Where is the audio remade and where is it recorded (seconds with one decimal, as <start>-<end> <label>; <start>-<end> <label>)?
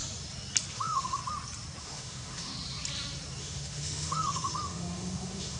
0.0-0.7 recorded; 0.7-1.2 remade; 1.2-1.8 recorded; 1.8-2.5 remade; 2.5-3.4 recorded; 3.4-5.6 remade